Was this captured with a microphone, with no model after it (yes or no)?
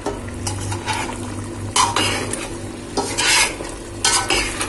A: yes